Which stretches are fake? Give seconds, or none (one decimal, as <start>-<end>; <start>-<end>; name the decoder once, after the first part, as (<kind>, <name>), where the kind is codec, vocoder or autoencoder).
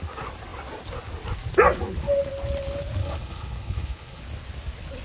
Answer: 3.0-4.2 (codec, HILCodec)